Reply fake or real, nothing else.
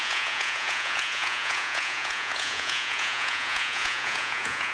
fake